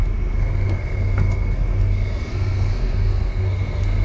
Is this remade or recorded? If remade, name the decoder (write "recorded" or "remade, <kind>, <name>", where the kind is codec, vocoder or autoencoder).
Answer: remade, codec, SNAC